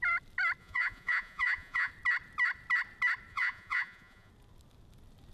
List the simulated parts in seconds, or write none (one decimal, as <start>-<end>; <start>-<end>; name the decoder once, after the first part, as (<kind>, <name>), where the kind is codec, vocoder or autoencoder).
0.6-1.9 (vocoder, Vocos); 3.3-4.3